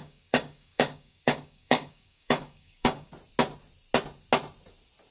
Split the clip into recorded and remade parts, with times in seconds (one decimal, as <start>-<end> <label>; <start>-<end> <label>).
0.0-3.1 remade; 3.1-5.1 recorded